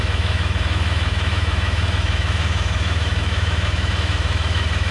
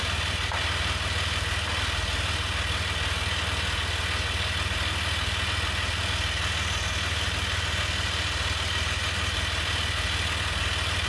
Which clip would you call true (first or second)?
second